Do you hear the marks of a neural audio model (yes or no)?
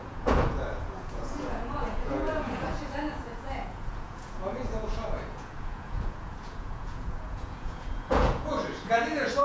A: yes